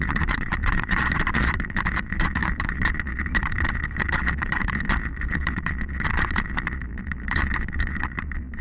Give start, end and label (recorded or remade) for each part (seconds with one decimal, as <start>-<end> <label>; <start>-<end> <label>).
0.0-8.6 remade